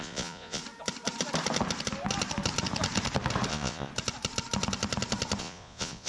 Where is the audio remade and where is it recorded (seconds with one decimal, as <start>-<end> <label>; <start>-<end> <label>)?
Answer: 0.0-0.6 remade; 0.6-3.5 recorded; 3.5-3.9 remade; 3.9-5.4 recorded; 5.4-6.1 remade